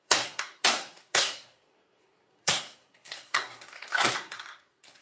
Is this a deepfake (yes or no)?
yes